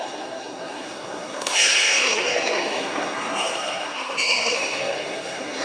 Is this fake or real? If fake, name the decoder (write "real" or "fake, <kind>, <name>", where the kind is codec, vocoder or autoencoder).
fake, codec, SNAC